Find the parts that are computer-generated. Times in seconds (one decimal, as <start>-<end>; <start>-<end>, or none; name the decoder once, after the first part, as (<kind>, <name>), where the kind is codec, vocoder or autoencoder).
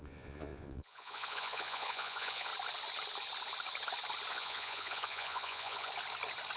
0.0-2.5 (vocoder, Vocos); 4.3-5.9